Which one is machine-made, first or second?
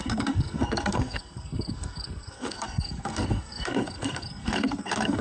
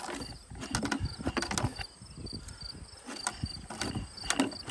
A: first